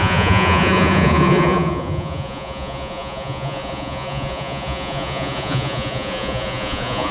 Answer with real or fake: fake